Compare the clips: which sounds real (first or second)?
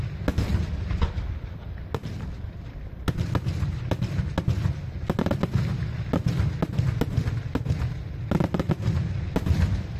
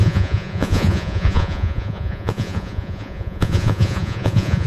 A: first